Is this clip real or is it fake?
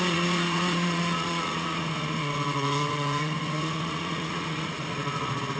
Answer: fake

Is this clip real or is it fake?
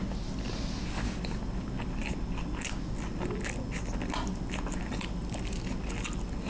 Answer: real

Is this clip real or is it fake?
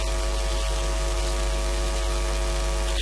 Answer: real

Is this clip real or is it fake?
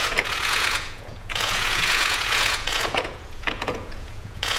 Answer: fake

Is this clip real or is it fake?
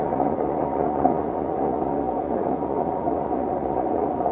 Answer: fake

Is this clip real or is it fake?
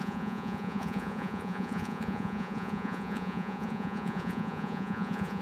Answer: fake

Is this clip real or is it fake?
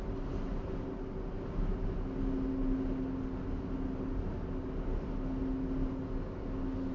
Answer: real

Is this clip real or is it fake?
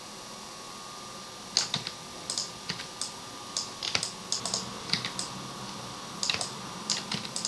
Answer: real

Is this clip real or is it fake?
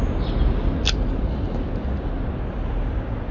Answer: real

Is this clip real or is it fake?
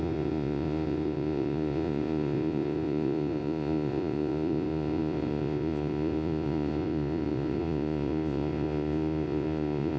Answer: fake